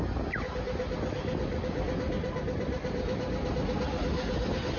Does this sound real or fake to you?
real